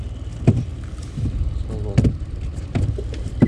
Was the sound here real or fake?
fake